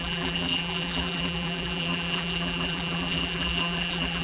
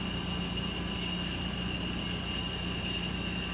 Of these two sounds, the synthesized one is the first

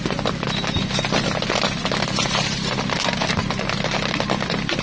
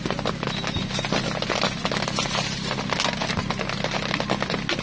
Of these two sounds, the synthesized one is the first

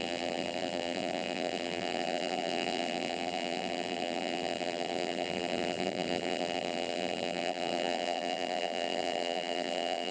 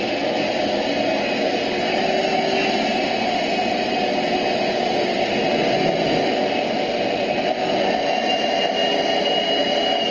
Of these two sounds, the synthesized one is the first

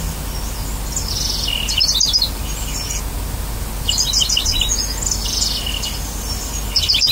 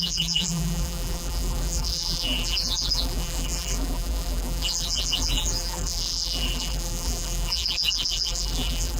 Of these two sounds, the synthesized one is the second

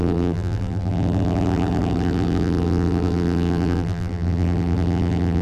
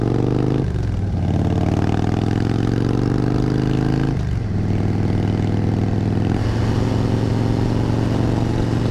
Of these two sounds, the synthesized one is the first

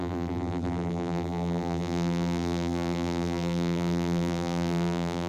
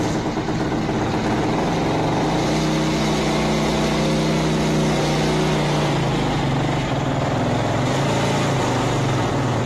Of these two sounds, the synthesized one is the first